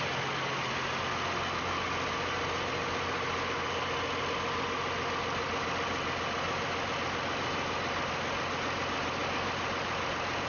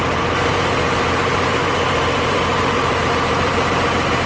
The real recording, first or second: first